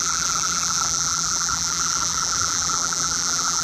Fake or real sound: fake